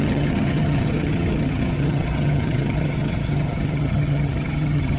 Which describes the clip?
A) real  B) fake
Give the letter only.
B